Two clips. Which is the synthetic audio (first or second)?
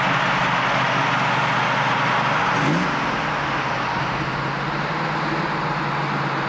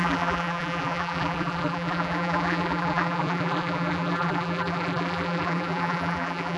second